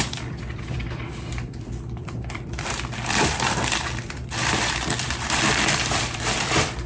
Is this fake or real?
fake